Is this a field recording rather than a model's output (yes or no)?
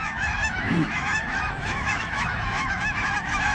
no